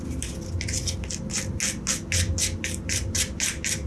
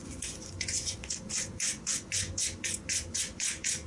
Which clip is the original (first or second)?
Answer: first